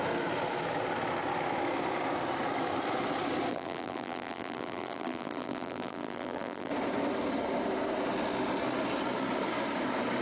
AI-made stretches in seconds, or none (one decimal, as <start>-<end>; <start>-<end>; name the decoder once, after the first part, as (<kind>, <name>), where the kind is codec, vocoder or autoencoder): 3.5-6.7 (vocoder, BigVGAN v2)